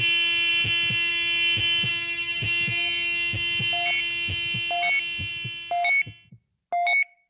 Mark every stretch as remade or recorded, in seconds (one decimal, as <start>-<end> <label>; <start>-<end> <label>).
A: 0.0-7.3 recorded